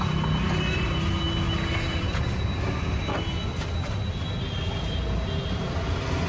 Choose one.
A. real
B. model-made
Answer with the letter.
A